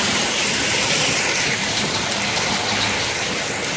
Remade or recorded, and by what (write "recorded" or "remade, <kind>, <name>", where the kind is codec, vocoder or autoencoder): recorded